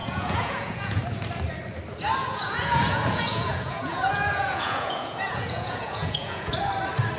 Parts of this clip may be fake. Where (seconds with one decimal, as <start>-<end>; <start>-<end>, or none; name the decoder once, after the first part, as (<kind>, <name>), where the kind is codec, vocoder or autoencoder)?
0.0-1.0 (vocoder, Vocos); 2.2-6.5